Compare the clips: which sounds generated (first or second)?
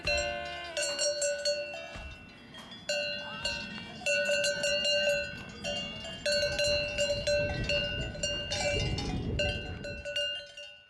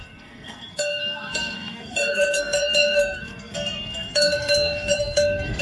second